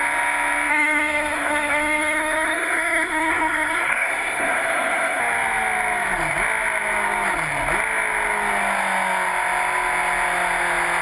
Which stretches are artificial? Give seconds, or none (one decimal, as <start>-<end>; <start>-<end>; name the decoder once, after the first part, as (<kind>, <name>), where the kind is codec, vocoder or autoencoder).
0.7-5.2 (codec, SNAC)